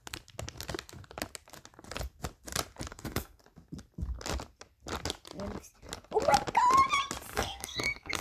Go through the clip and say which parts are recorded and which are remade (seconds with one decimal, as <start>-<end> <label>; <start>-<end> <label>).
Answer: 0.0-2.9 recorded; 2.9-3.4 remade; 3.4-7.3 recorded; 7.3-8.2 remade